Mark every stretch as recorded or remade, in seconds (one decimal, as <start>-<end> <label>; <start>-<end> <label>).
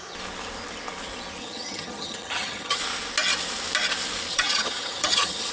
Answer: 0.0-1.4 recorded; 1.4-2.8 remade; 2.8-4.3 recorded; 4.3-5.5 remade